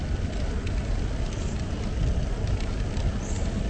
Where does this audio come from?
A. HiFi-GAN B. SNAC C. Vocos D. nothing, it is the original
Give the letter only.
D